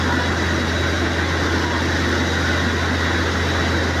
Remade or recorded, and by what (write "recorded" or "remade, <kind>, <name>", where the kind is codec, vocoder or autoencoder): recorded